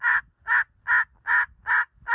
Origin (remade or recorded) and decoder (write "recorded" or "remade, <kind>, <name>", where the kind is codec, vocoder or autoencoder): recorded